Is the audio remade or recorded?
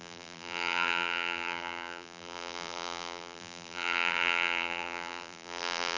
remade